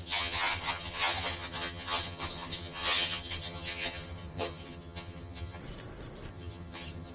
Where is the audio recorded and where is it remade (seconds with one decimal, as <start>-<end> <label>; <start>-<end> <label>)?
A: 0.0-5.6 remade; 5.6-6.3 recorded; 6.3-7.1 remade